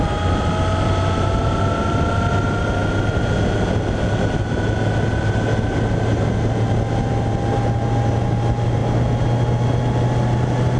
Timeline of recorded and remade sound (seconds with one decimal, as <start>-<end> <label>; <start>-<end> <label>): 0.0-10.8 recorded

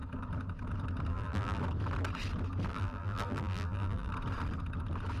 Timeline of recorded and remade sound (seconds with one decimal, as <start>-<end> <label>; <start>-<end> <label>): 0.0-1.1 recorded; 1.1-1.6 remade; 1.6-2.7 recorded; 2.7-4.1 remade; 4.1-5.2 recorded

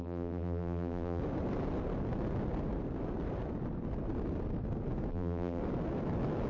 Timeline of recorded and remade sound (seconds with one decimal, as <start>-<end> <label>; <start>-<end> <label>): 0.0-1.2 remade; 1.2-5.1 recorded; 5.1-5.6 remade; 5.6-6.5 recorded